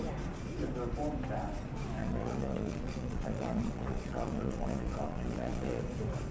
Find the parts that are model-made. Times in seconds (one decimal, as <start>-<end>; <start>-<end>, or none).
2.0-5.8